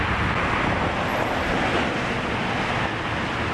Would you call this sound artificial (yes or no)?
no